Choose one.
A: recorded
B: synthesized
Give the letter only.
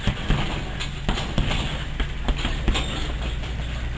A